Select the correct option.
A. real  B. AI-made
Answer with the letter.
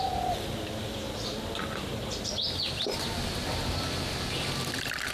B